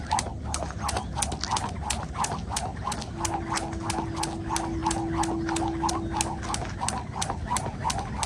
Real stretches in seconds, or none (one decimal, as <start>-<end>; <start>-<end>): 0.0-8.3